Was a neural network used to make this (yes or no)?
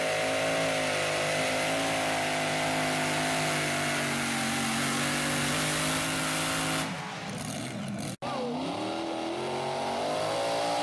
no